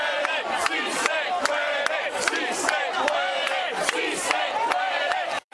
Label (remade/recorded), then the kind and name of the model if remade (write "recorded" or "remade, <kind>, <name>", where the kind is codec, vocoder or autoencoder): remade, vocoder, BigVGAN v2